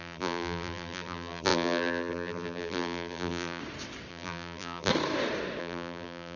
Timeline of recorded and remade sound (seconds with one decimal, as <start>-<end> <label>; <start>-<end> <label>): 0.0-3.6 remade; 3.6-4.1 recorded; 4.1-4.9 remade; 4.9-5.6 recorded; 5.6-6.4 remade